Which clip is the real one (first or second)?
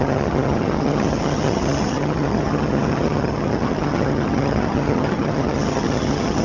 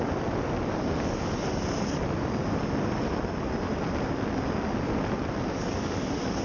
second